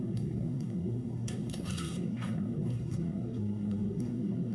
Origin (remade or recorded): remade